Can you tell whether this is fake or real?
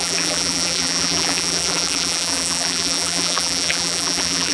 fake